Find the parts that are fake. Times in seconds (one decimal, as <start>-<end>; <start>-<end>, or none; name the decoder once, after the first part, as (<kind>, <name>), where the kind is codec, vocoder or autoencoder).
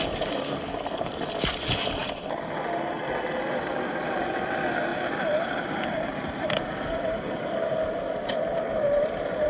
4.9-7.4 (vocoder, BigVGAN v2)